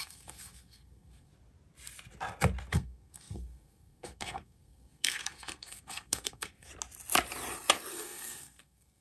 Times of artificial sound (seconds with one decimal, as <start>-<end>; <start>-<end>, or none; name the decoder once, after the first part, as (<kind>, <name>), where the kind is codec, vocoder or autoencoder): 0.0-1.3 (codec, SNAC); 2.7-6.7; 7.9-9.0